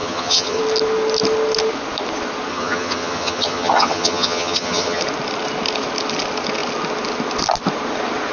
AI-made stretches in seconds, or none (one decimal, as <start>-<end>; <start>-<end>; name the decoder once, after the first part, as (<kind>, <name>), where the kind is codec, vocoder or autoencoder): 0.0-0.6 (vocoder, HiFi-GAN); 2.5-5.0